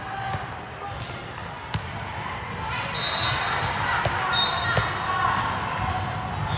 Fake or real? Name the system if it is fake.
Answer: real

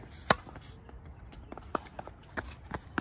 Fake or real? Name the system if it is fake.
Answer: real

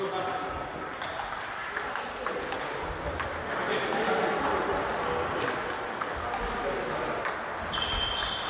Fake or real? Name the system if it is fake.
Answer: real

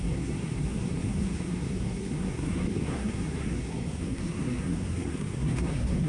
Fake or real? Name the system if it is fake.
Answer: fake, codec, SNAC